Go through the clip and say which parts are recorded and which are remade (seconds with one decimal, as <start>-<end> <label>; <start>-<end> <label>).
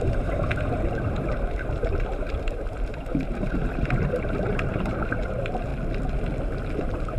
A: 0.0-5.7 remade; 5.7-6.8 recorded; 6.8-7.2 remade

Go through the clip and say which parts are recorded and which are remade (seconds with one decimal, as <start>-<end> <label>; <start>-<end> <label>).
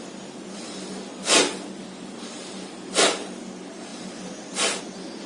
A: 0.0-5.3 recorded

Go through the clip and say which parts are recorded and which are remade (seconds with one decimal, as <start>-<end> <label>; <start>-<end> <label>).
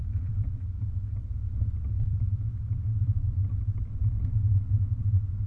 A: 0.0-0.5 remade; 0.5-1.3 recorded; 1.3-3.3 remade; 3.3-5.5 recorded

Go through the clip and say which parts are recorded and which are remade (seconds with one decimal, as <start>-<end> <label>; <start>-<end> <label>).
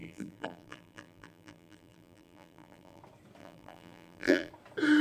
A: 0.0-3.0 remade; 3.0-3.4 recorded; 3.4-4.5 remade; 4.5-5.0 recorded